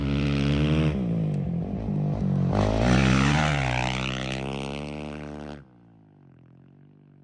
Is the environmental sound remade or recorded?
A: recorded